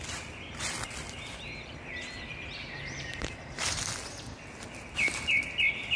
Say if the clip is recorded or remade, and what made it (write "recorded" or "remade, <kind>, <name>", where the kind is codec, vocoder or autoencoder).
recorded